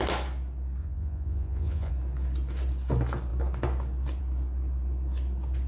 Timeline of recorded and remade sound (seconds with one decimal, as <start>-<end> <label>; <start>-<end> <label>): 0.0-0.8 recorded; 0.8-1.9 remade; 1.9-5.7 recorded